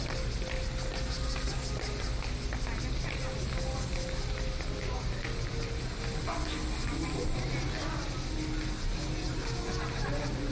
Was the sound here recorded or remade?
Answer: recorded